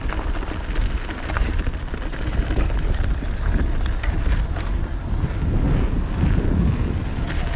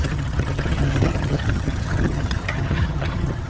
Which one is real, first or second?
first